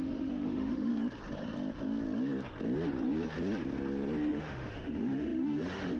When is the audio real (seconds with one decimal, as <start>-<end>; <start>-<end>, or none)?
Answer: 0.9-4.3